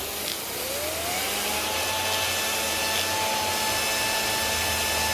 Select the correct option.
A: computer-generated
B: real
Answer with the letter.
B